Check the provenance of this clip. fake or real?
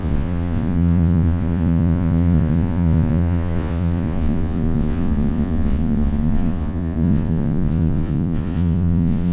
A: fake